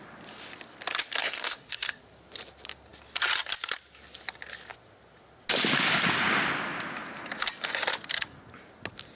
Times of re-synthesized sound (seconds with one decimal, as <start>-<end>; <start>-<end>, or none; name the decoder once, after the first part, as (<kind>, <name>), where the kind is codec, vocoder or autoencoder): 1.2-2.0 (codec, SNAC)